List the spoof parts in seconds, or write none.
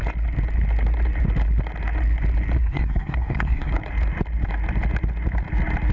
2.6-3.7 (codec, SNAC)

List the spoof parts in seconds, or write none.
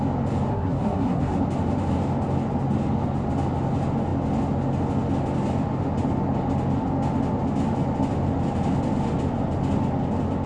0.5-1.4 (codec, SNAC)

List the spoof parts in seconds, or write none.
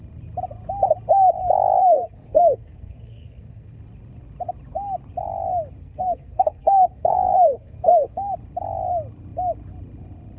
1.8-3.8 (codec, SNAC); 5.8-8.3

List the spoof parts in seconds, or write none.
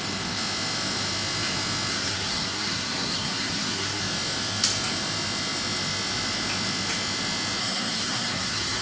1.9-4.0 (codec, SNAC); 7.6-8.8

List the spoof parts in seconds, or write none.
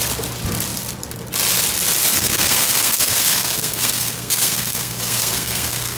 2.2-6.0 (codec, SNAC)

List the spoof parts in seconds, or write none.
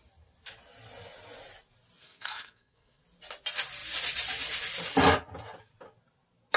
2.0-3.0 (codec, SNAC)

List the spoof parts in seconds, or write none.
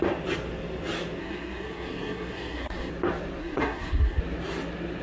1.2-2.9 (codec, SNAC); 3.4-4.2